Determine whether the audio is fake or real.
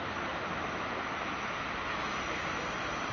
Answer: real